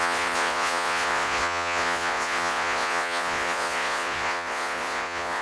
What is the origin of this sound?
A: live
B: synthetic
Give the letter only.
B